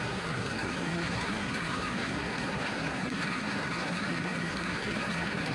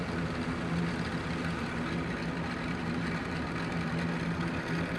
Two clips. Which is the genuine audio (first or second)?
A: second